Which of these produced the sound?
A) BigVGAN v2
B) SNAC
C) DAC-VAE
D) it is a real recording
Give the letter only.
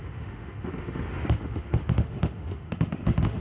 C